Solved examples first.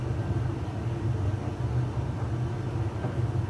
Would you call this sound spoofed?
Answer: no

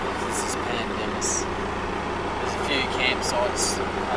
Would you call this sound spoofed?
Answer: no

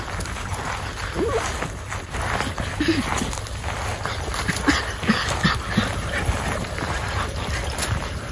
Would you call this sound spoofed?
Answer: no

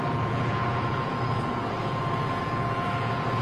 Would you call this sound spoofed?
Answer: yes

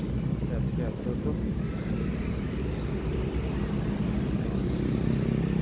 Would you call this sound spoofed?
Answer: no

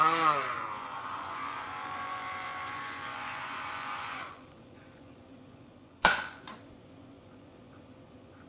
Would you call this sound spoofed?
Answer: yes